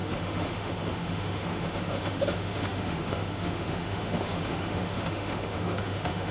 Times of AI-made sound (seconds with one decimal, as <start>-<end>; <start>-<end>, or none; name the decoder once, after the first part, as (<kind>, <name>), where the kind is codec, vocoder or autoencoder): 0.0-6.3 (autoencoder, DAC-VAE)